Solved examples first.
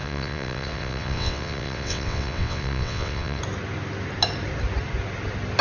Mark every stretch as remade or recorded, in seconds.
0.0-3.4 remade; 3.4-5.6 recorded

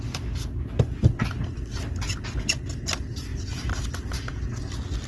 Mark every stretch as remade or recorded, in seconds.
0.0-5.1 recorded

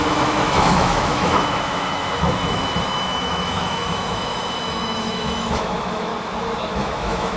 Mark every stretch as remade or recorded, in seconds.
0.0-6.1 remade; 6.1-6.7 recorded; 6.7-7.4 remade

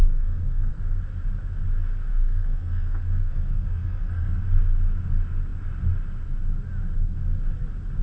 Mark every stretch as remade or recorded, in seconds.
0.0-0.7 remade; 0.7-2.1 recorded; 2.1-4.4 remade; 4.4-8.0 recorded

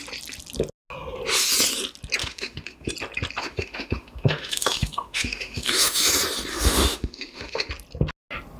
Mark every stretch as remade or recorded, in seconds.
0.0-2.2 recorded; 2.2-2.9 remade; 2.9-3.4 recorded; 3.4-6.1 remade; 6.1-6.5 recorded; 6.5-7.7 remade; 7.7-8.6 recorded

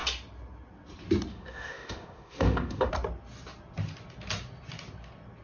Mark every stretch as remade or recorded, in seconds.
0.0-1.3 recorded; 1.3-2.9 remade; 2.9-5.4 recorded

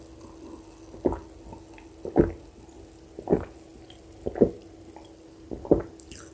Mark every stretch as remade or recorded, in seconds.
0.0-6.3 recorded